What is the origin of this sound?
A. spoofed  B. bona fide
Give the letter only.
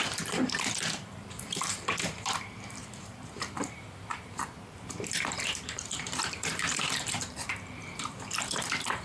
A